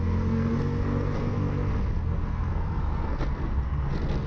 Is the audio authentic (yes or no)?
no